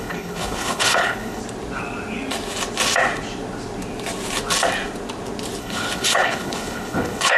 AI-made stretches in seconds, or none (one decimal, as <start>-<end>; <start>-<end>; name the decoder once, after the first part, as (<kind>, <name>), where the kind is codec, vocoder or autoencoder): 0.0-1.4 (codec, HILCodec); 5.6-7.4